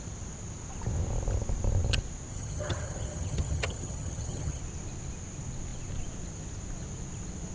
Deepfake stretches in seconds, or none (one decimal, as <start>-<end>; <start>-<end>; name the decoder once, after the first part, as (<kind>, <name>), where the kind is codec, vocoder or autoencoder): 2.3-4.6 (vocoder, HiFi-GAN)